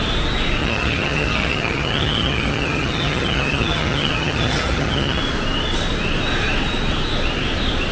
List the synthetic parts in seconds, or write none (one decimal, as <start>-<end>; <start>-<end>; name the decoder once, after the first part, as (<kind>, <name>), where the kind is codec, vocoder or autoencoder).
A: 0.6-5.2 (vocoder, HiFi-GAN)